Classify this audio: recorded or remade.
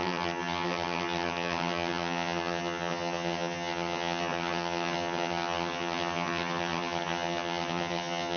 remade